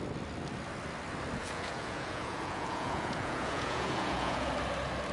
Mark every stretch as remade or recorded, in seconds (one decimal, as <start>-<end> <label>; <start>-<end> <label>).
0.0-1.4 recorded; 1.4-4.5 remade; 4.5-5.1 recorded